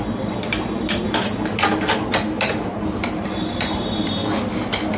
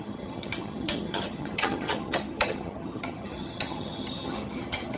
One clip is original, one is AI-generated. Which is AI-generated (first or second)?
second